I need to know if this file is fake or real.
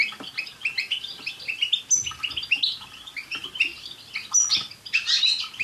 real